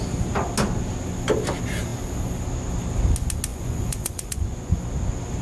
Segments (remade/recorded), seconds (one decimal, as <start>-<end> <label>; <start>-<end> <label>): 0.0-3.5 recorded; 3.5-4.8 remade; 4.8-5.4 recorded